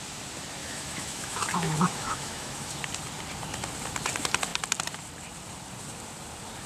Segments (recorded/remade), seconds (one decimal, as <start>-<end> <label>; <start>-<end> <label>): 0.0-0.6 recorded; 0.6-2.8 remade; 2.8-6.7 recorded